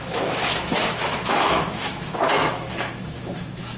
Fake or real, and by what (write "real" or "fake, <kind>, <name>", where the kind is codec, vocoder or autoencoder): fake, autoencoder, DAC-VAE